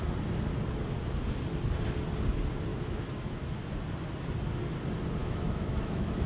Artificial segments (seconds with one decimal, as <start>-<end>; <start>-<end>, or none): 2.7-3.4; 5.2-6.3